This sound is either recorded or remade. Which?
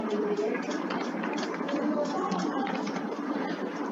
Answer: remade